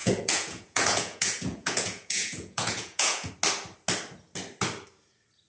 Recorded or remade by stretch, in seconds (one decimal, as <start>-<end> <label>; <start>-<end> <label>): 0.0-3.3 remade; 3.3-5.5 recorded